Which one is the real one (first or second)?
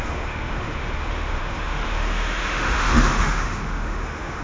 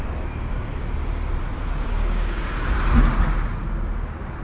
second